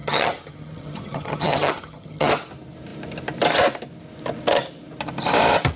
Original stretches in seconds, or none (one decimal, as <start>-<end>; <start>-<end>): 2.3-5.8

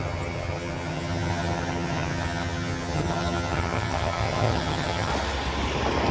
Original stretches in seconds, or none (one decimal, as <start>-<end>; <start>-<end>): 5.1-6.1

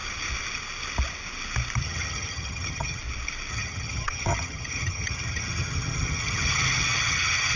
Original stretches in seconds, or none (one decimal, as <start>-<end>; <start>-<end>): 0.0-1.8; 3.0-3.5

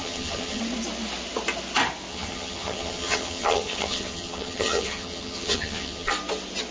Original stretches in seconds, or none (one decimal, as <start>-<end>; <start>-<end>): 0.6-2.1; 6.1-6.7

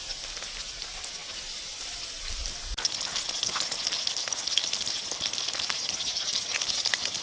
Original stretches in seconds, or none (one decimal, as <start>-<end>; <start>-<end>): 0.0-7.2

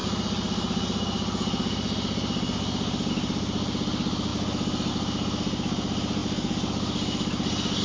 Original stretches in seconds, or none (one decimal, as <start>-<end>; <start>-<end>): 0.0-7.8